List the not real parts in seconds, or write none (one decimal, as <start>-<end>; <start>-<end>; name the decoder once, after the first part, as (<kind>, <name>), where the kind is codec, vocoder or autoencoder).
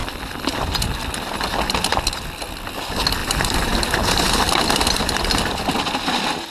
none